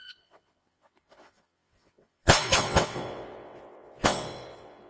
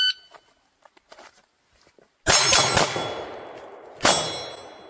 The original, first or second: second